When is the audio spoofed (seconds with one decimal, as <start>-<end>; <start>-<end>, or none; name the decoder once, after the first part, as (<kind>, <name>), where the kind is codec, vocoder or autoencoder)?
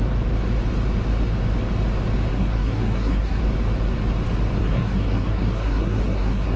2.3-3.4 (codec, SNAC); 4.6-6.6